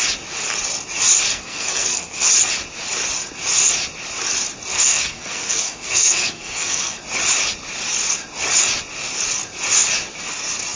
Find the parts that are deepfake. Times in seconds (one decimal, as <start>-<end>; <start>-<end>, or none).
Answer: 1.3-2.3; 4.7-7.0